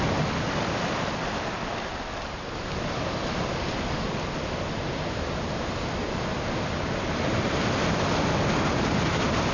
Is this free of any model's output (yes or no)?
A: yes